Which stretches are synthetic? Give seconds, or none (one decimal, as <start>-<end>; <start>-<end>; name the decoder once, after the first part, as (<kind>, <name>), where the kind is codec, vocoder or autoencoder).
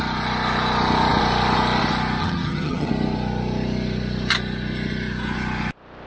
2.2-2.9 (vocoder, HiFi-GAN)